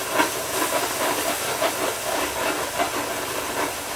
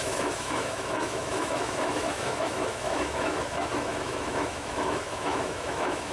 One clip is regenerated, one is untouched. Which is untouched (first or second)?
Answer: first